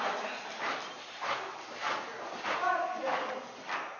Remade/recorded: recorded